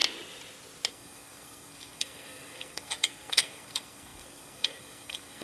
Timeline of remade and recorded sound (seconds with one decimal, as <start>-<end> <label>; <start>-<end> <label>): 0.0-0.9 recorded; 0.9-5.4 remade